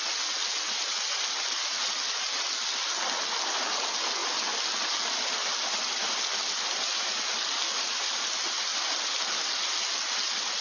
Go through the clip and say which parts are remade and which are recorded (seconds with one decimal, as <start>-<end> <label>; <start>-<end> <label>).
0.0-10.6 recorded